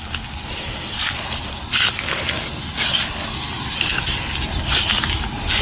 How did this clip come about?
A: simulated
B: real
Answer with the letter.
B